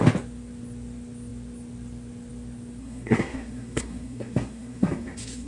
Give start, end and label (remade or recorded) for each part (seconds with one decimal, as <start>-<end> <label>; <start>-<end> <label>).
0.0-2.8 recorded; 2.8-5.5 remade